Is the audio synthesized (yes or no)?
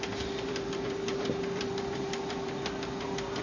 no